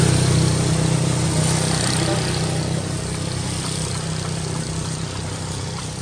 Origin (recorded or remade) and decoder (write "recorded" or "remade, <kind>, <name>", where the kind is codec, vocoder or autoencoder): recorded